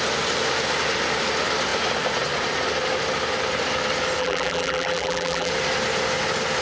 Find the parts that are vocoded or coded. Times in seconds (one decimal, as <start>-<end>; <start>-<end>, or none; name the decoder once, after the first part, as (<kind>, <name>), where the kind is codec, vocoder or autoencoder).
4.2-5.5 (vocoder, BigVGAN v2)